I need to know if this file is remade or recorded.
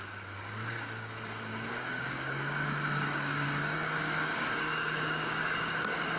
remade